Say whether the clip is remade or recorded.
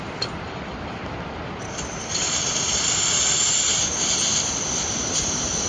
remade